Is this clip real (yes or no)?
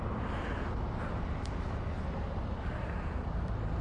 yes